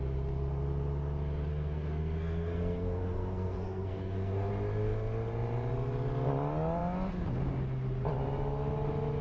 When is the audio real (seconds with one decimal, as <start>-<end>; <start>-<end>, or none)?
0.0-1.5; 4.5-9.2